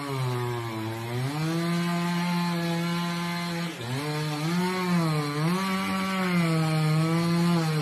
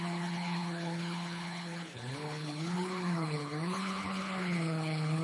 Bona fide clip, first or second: first